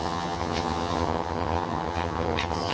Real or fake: fake